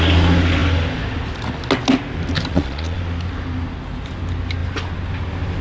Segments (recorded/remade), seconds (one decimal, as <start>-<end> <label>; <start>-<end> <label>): 0.0-2.5 recorded; 2.5-3.0 remade; 3.0-5.6 recorded